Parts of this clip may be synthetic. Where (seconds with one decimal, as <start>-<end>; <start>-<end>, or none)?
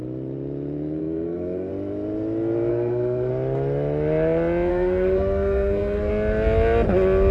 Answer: 1.0-1.7; 2.7-3.3; 4.7-6.1